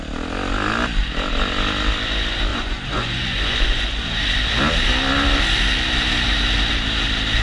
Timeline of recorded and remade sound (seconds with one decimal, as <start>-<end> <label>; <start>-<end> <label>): 0.0-2.5 recorded; 2.5-4.2 remade; 4.2-7.4 recorded

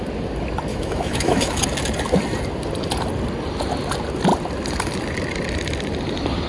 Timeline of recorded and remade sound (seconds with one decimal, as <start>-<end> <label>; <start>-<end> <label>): 0.0-0.7 recorded; 0.7-1.6 remade; 1.6-6.5 recorded

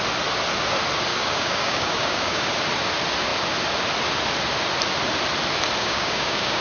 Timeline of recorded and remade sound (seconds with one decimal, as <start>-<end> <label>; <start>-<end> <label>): 0.0-1.1 recorded; 1.1-2.5 remade; 2.5-5.8 recorded; 5.8-6.6 remade

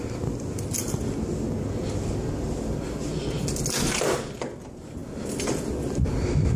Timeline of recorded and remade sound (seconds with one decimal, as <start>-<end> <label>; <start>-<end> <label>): 0.0-6.6 recorded

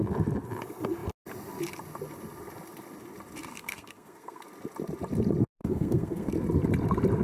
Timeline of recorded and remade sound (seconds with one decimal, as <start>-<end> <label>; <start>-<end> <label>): 0.0-3.5 recorded; 3.5-4.4 remade; 4.4-5.6 recorded; 5.6-6.3 remade; 6.3-7.2 recorded

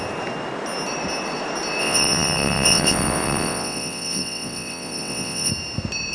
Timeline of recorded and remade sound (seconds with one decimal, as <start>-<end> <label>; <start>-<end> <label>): 0.0-1.8 recorded; 1.8-5.5 remade; 5.5-6.1 recorded

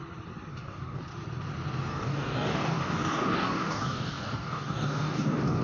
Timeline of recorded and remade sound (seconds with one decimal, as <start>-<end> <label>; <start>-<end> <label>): 0.0-0.5 recorded; 0.5-1.0 remade; 1.0-1.9 recorded; 1.9-5.6 remade